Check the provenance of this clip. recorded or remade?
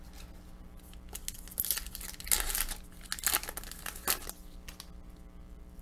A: recorded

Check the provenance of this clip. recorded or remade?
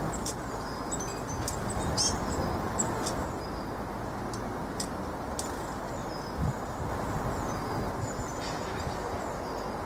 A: recorded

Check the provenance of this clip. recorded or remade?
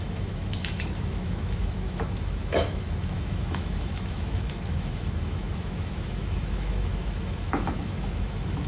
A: remade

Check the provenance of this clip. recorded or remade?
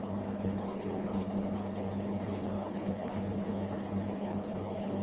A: remade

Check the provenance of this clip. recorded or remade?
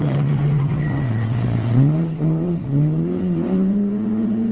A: remade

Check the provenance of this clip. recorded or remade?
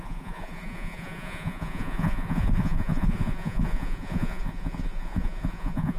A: remade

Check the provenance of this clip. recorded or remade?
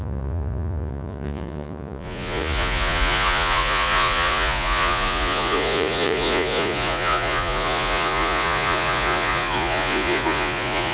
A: remade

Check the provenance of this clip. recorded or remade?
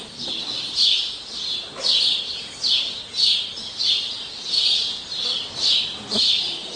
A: recorded